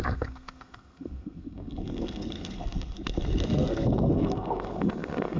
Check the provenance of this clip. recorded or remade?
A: remade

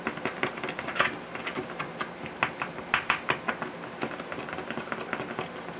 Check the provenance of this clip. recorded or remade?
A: recorded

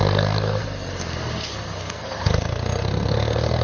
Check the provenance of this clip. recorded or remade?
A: remade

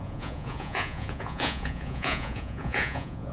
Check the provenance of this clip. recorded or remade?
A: remade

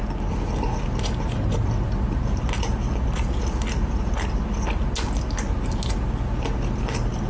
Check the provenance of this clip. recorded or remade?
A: recorded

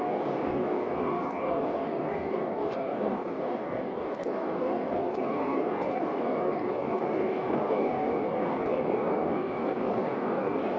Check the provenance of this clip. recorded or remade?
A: remade